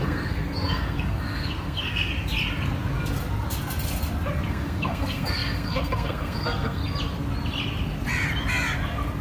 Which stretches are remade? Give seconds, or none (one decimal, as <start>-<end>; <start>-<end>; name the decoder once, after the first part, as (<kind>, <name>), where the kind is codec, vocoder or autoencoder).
0.0-2.1 (codec, SNAC); 4.5-6.8